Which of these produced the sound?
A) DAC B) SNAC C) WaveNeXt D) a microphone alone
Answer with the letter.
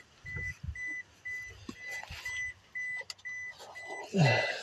D